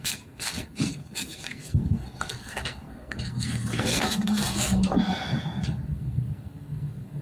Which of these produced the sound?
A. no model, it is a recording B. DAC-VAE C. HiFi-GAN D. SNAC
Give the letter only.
D